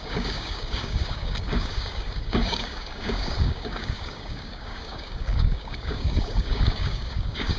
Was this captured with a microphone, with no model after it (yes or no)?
no